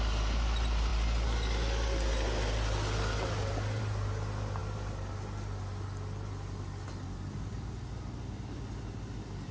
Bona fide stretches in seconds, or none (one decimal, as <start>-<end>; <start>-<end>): 0.0-9.5